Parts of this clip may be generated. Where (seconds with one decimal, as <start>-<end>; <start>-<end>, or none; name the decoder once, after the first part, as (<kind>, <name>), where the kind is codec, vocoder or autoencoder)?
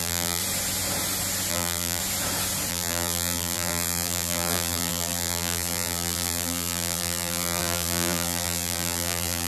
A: 0.0-0.4 (vocoder, BigVGAN v2); 1.5-2.0; 2.7-9.5